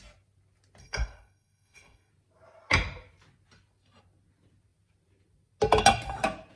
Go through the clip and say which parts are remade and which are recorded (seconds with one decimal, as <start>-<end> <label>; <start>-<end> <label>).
0.0-0.8 recorded; 0.8-2.1 remade; 2.1-6.6 recorded